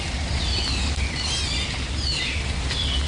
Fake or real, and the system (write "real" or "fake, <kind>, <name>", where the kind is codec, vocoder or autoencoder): real